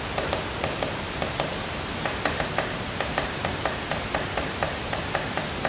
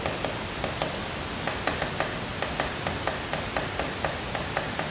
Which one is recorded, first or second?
second